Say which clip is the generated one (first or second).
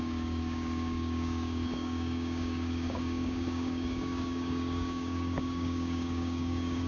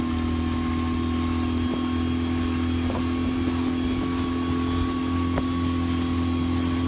first